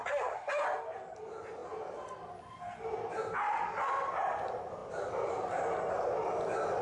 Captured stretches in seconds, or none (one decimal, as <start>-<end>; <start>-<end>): 0.5-6.8